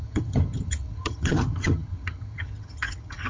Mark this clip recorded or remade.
remade